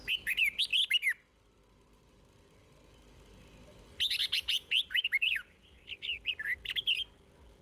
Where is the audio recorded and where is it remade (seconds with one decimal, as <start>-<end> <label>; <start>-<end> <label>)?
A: 0.0-4.2 recorded; 4.2-5.8 remade; 5.8-7.6 recorded